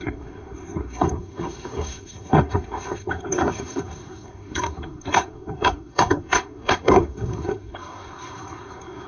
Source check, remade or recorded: remade